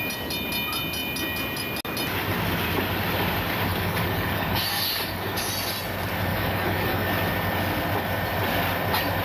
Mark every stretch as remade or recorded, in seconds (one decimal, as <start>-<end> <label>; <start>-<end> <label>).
0.0-3.7 recorded; 3.7-5.5 remade; 5.5-6.3 recorded; 6.3-7.1 remade; 7.1-9.2 recorded